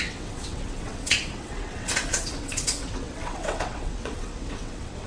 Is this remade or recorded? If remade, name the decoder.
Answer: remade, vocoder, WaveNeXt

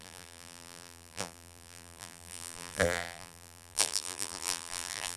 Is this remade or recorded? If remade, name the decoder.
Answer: remade, vocoder, BigVGAN v2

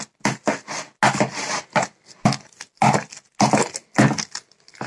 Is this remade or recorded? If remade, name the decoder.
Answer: recorded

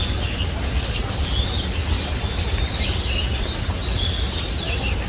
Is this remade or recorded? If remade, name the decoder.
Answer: recorded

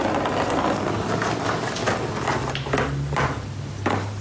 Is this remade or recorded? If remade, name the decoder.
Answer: recorded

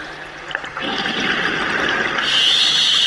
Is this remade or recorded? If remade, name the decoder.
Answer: recorded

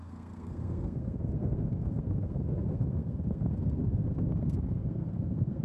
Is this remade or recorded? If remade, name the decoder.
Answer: remade, codec, SNAC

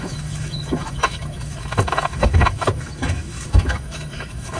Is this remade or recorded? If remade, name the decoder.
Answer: remade, autoencoder, DAC-VAE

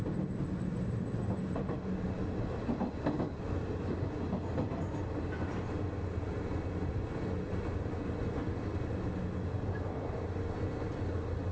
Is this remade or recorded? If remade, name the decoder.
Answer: recorded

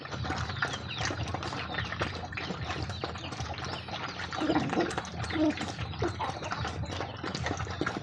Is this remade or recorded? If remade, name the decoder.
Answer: recorded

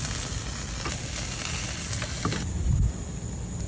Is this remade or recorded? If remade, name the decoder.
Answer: recorded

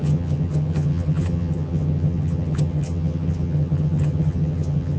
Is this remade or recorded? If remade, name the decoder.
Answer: remade, vocoder, HiFi-GAN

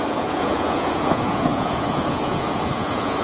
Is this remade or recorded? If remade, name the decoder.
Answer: remade, vocoder, Vocos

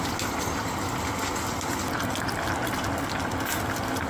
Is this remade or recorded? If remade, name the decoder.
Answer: recorded